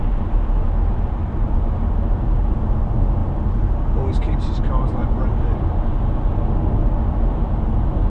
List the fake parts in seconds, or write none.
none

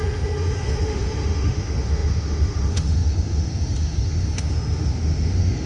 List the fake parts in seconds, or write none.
0.0-5.7 (autoencoder, DAC-VAE)

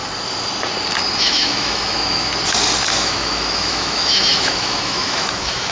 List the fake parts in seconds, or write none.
1.2-2.3 (autoencoder, DAC-VAE); 2.9-5.7

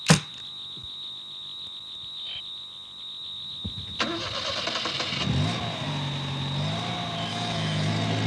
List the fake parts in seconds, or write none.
7.3-7.9 (autoencoder, DAC-VAE)

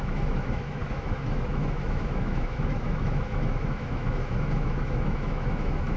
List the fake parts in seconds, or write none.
0.0-6.0 (autoencoder, DAC-VAE)

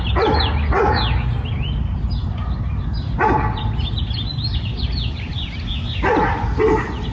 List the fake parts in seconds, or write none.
none